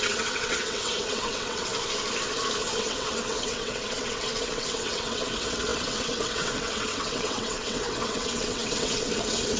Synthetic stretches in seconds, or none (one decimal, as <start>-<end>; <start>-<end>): 0.0-1.7; 2.6-9.6